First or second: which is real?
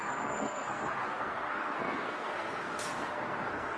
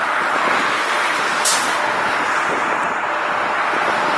second